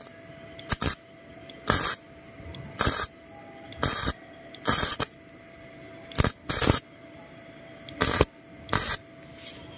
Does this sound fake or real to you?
real